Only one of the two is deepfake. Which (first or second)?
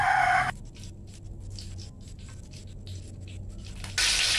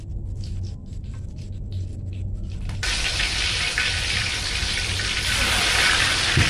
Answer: second